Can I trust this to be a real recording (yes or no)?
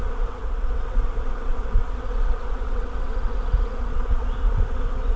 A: no